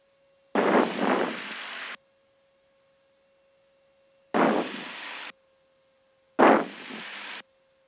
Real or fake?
real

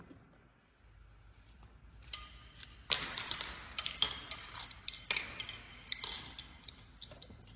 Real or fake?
real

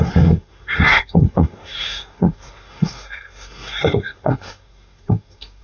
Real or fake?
fake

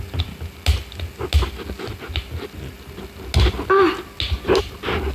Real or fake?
real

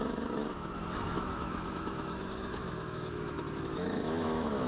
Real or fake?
fake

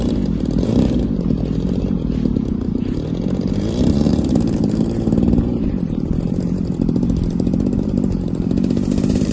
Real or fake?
fake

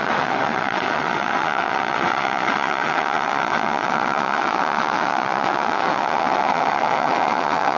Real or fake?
fake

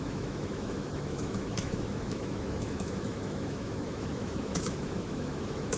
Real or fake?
fake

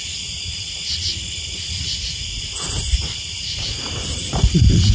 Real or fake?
fake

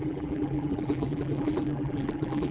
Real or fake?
fake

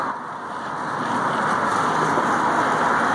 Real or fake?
real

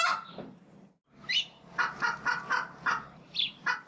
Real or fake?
real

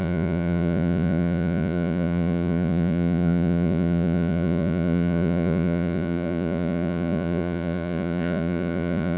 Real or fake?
fake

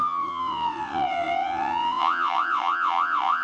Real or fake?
fake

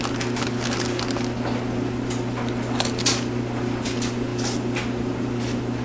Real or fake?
real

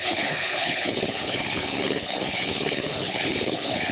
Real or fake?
fake